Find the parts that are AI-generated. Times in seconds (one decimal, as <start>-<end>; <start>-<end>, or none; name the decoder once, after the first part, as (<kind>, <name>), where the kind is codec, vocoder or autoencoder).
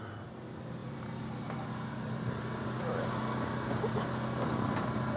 0.8-3.0 (vocoder, BigVGAN v2)